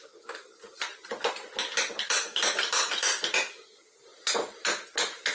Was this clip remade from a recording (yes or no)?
no